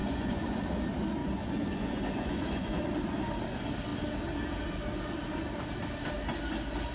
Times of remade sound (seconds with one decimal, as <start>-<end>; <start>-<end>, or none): 0.0-0.6; 1.2-2.8